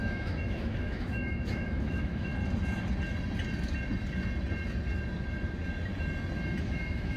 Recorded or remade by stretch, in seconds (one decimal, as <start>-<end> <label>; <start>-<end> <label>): 0.0-2.3 remade; 2.3-6.6 recorded; 6.6-7.2 remade